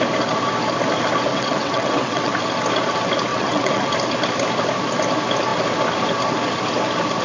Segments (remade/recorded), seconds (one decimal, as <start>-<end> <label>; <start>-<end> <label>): 0.0-1.3 recorded; 1.3-2.3 remade; 2.3-3.3 recorded; 3.3-3.9 remade; 3.9-7.2 recorded